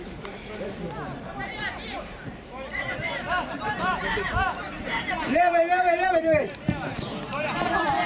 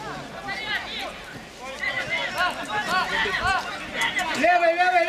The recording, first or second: second